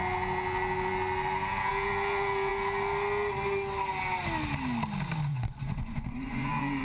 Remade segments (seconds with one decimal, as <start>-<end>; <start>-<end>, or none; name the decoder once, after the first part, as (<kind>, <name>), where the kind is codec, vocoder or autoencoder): 5.3-6.8 (vocoder, Vocos)